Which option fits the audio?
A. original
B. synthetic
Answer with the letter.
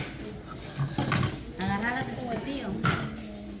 A